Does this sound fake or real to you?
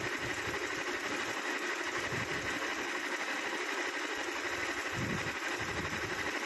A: real